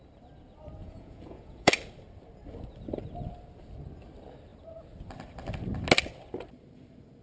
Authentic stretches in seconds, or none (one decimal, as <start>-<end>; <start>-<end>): 0.0-0.8; 1.7-7.2